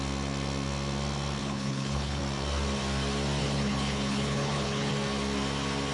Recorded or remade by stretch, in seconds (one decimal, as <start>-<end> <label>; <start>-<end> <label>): 0.0-1.4 recorded; 1.4-2.2 remade; 2.2-3.4 recorded; 3.4-4.9 remade; 4.9-5.9 recorded